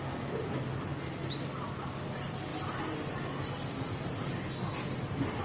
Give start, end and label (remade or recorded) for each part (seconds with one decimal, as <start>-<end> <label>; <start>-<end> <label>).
0.0-5.4 recorded